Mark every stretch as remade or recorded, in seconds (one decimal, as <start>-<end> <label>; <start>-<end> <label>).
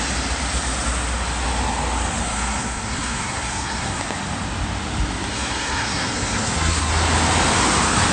0.0-2.2 recorded; 2.2-4.0 remade; 4.0-5.3 recorded; 5.3-6.9 remade; 6.9-8.1 recorded